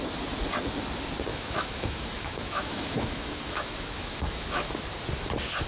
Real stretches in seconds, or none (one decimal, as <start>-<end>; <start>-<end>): 0.0-1.3; 4.7-5.7